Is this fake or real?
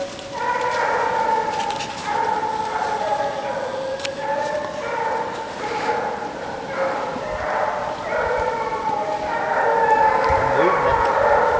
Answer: real